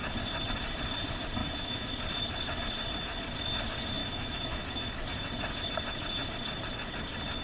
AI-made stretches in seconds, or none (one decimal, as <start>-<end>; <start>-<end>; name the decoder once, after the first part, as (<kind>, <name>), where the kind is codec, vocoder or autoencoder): 1.4-1.9 (autoencoder, DAC-VAE); 4.0-4.9